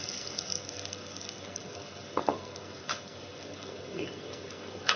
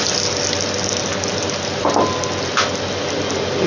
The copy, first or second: first